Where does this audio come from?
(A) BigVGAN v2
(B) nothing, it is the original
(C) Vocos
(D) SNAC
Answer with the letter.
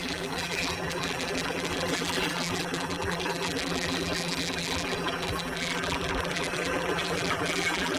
A